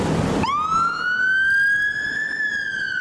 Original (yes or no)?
yes